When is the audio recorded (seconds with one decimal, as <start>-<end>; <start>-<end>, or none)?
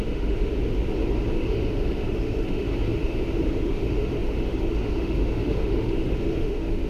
0.5-1.3; 2.7-3.4